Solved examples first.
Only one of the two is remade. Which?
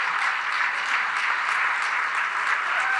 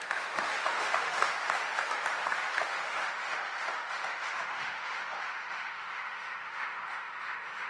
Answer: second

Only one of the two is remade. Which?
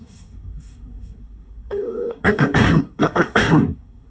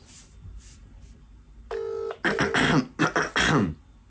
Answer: first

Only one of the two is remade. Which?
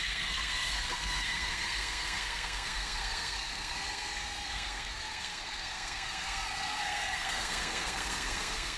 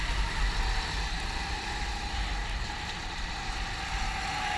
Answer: first